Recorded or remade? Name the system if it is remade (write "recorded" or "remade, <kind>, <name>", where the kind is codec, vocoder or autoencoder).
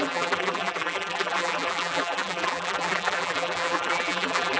remade, vocoder, BigVGAN v2